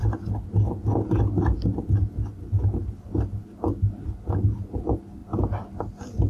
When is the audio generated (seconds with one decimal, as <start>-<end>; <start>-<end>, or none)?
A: none

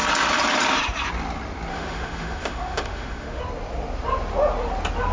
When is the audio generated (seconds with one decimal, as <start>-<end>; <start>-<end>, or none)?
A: 1.7-3.4